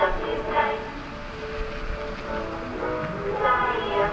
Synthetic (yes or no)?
no